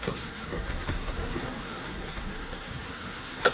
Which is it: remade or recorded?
remade